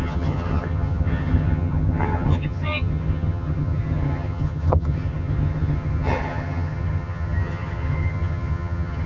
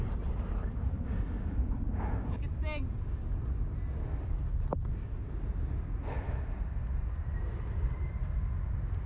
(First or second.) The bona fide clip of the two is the second